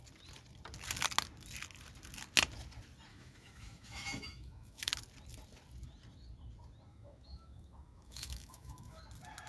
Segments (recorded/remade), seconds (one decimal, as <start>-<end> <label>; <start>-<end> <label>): 0.0-3.1 recorded; 3.1-4.9 remade; 4.9-6.9 recorded; 6.9-9.0 remade; 9.0-9.5 recorded